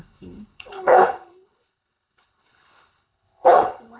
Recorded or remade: remade